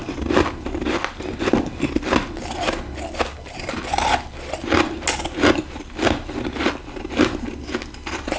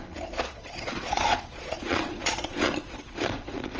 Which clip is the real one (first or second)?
first